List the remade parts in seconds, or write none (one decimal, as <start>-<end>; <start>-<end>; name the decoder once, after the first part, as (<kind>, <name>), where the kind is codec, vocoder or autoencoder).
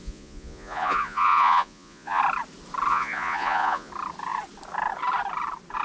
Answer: 0.0-2.2 (vocoder, Vocos); 2.9-3.9